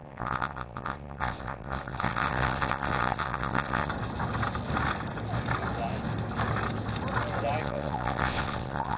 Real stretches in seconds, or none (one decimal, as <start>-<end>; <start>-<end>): 3.9-7.6